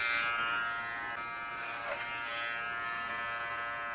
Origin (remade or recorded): recorded